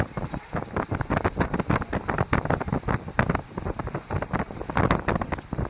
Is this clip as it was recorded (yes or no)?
yes